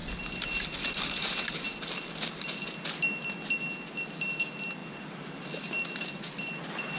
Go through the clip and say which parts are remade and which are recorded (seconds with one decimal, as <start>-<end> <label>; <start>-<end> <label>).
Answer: 0.0-7.0 recorded